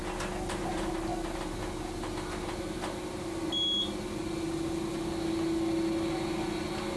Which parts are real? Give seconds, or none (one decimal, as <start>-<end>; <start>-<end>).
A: 0.0-7.0